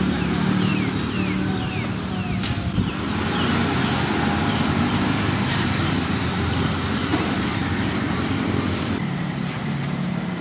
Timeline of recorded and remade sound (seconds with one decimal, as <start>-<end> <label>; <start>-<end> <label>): 0.0-0.7 remade; 0.7-4.7 recorded; 4.7-10.4 remade